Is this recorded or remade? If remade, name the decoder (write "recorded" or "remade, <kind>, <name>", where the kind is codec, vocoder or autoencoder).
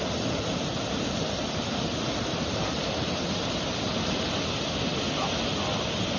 recorded